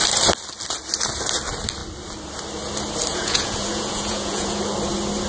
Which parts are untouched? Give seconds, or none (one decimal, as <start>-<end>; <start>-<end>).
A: 0.0-3.1; 4.6-5.3